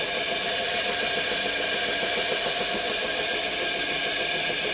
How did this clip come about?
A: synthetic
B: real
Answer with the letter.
B